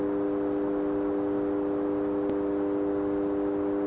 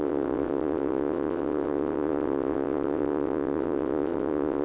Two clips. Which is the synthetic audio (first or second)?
second